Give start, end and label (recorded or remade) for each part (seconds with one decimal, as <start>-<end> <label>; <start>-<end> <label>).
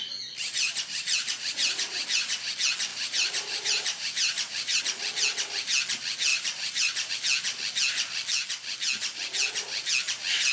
0.0-0.4 recorded; 0.4-2.5 remade; 2.5-2.9 recorded; 2.9-4.8 remade; 4.8-6.3 recorded; 6.3-7.1 remade; 7.1-10.5 recorded